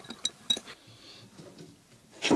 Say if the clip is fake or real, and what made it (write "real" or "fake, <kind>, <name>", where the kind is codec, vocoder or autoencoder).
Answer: real